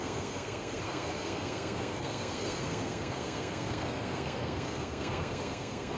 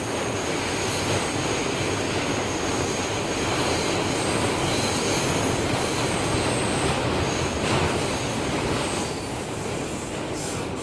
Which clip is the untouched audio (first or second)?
second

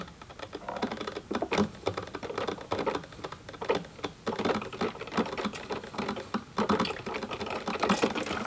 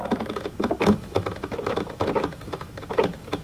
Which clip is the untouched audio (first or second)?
first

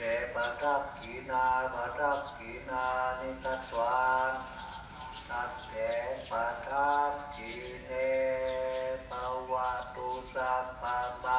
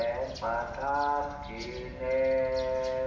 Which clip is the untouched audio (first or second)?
second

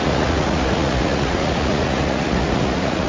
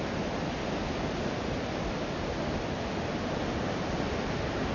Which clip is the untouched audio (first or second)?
second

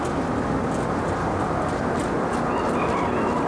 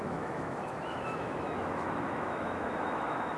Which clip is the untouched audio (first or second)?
first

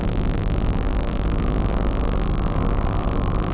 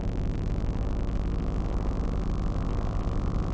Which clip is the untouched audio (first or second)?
second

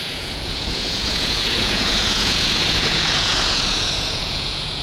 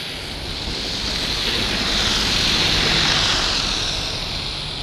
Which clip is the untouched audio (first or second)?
second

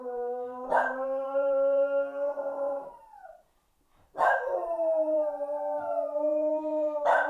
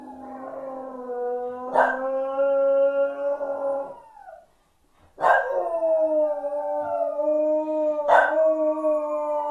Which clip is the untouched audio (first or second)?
second